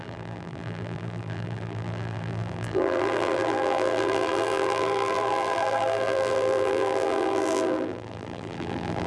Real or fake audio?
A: fake